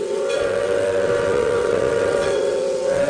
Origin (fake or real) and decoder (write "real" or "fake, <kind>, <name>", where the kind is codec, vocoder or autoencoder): fake, vocoder, WaveNeXt